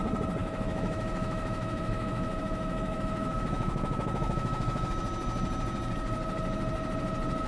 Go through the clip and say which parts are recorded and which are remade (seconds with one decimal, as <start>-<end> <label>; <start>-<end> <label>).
0.0-0.4 recorded; 0.4-4.9 remade; 4.9-7.5 recorded